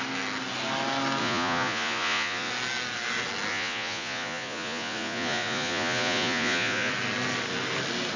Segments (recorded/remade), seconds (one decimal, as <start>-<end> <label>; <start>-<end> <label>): 0.0-1.2 recorded; 1.2-2.5 remade; 2.5-3.5 recorded; 3.5-6.9 remade; 6.9-8.2 recorded